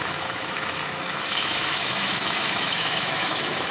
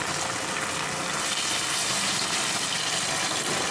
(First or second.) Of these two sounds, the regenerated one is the first